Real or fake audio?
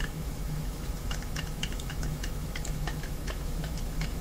fake